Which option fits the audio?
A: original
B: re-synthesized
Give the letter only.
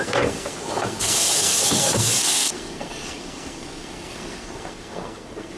B